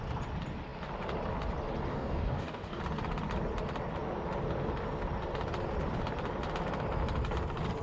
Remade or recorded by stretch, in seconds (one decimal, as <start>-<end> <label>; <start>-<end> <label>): 0.0-1.9 recorded; 1.9-2.8 remade; 2.8-7.8 recorded

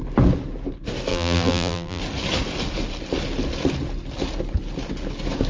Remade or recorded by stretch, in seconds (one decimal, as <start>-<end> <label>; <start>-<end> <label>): 0.0-1.1 recorded; 1.1-2.0 remade; 2.0-5.5 recorded

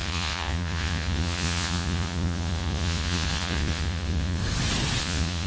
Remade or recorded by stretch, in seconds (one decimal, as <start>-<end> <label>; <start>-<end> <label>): 0.0-4.4 remade; 4.4-5.0 recorded; 5.0-5.5 remade

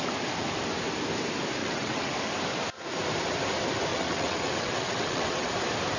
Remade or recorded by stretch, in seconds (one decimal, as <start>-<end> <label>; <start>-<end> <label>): 0.0-1.6 recorded; 1.6-2.1 remade; 2.1-3.9 recorded; 3.9-5.5 remade; 5.5-6.0 recorded

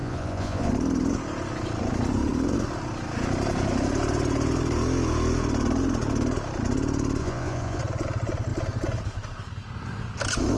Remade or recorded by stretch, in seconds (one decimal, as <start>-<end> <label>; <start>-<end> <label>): 0.0-0.7 remade; 0.7-7.2 recorded; 7.2-7.8 remade; 7.8-10.6 recorded